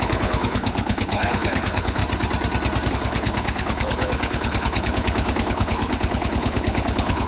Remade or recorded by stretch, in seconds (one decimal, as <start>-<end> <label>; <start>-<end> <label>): 0.0-2.0 remade; 2.0-2.9 recorded; 2.9-7.3 remade